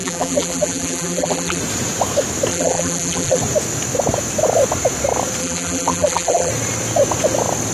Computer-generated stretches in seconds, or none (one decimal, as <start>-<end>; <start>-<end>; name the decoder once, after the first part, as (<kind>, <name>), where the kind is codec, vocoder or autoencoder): 0.0-1.6 (vocoder, BigVGAN v2); 2.5-3.4; 5.4-6.5